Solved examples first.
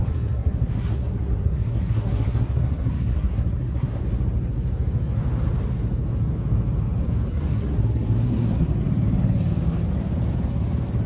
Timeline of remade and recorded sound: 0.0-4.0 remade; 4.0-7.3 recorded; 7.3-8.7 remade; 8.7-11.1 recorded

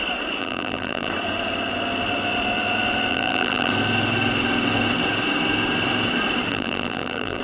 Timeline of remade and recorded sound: 0.0-0.4 recorded; 0.4-1.1 remade; 1.1-3.1 recorded; 3.1-3.7 remade; 3.7-6.5 recorded; 6.5-7.4 remade

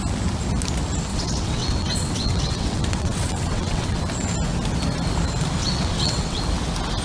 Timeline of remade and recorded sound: 0.0-1.1 recorded; 1.1-4.0 remade; 4.0-5.6 recorded; 5.6-6.4 remade; 6.4-7.0 recorded

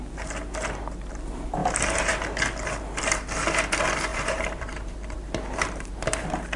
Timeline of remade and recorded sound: 0.0-1.6 recorded; 1.6-2.1 remade; 2.1-4.1 recorded; 4.1-5.9 remade; 5.9-6.6 recorded

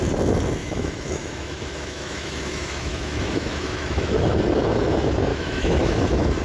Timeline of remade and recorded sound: 0.0-0.6 recorded; 0.6-4.4 remade; 4.4-5.3 recorded; 5.3-6.0 remade; 6.0-6.4 recorded

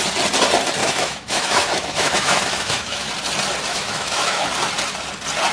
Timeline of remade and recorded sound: 0.0-0.8 recorded; 0.8-3.1 remade; 3.1-3.7 recorded; 3.7-4.5 remade; 4.5-5.5 recorded